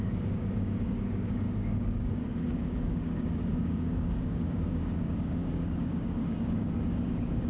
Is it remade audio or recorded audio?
remade